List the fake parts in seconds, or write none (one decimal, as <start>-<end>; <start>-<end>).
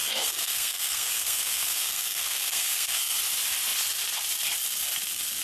0.0-3.2